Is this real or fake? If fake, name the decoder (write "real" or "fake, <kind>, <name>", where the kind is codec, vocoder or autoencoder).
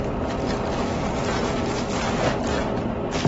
real